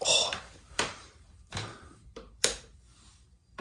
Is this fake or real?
fake